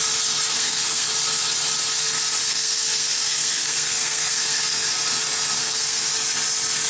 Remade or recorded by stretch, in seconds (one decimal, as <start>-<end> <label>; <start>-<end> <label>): 0.0-0.5 recorded; 0.5-1.1 remade; 1.1-2.4 recorded; 2.4-4.9 remade; 4.9-5.6 recorded; 5.6-6.1 remade; 6.1-6.9 recorded